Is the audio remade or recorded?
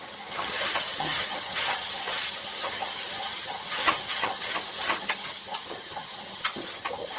remade